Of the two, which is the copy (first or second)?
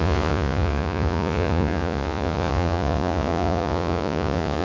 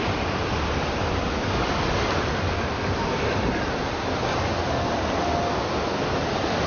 first